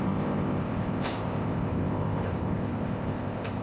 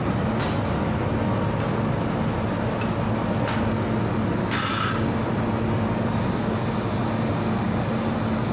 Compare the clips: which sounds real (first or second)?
second